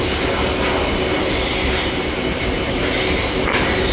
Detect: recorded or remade recorded